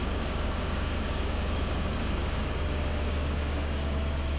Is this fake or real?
fake